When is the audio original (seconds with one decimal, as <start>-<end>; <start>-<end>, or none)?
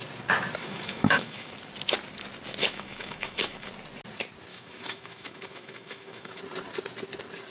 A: 0.0-0.6; 1.5-2.6; 3.7-4.5; 6.4-7.5